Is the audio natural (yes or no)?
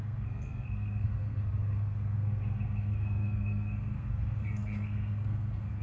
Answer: no